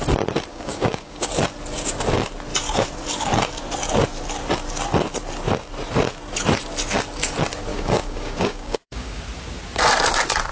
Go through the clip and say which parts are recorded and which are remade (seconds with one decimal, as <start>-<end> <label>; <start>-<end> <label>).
0.0-0.5 recorded; 0.5-1.3 remade; 1.3-7.7 recorded; 7.7-9.2 remade; 9.2-10.5 recorded